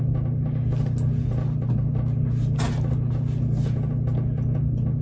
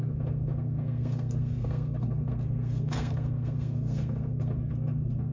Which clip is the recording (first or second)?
first